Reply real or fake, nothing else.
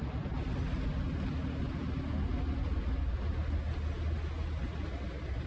real